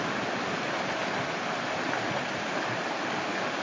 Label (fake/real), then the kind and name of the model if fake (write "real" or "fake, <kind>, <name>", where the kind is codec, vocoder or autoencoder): real